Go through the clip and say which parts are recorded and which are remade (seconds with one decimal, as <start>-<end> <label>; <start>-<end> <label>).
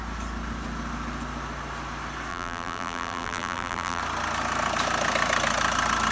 0.0-2.3 recorded; 2.3-4.0 remade; 4.0-6.1 recorded